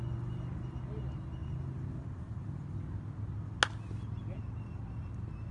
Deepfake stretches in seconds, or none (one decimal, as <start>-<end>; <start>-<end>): none